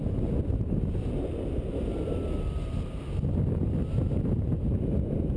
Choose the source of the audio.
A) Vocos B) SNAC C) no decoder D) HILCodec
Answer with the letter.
C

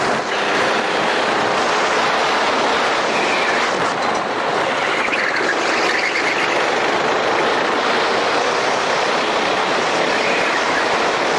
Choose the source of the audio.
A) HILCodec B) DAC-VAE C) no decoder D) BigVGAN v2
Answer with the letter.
C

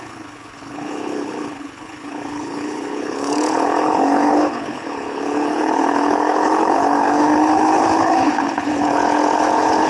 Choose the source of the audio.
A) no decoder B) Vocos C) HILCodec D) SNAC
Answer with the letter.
C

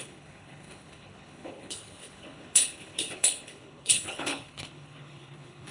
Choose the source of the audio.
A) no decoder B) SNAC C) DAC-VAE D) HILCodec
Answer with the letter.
D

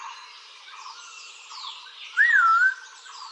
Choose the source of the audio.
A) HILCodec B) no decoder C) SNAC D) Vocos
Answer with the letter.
B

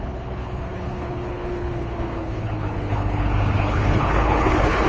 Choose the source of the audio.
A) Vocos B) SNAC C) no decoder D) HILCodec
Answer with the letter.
D